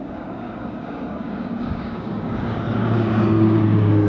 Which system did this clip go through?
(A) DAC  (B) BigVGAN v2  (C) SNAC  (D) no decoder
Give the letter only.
A